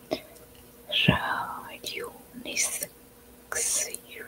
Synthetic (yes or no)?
no